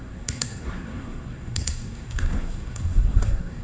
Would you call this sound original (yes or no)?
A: no